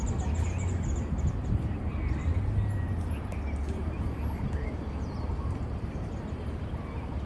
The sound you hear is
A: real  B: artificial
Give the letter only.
A